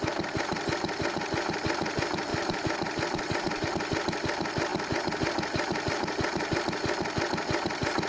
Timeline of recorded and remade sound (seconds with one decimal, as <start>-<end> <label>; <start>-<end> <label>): 0.0-2.3 recorded; 2.3-3.7 remade; 3.7-8.1 recorded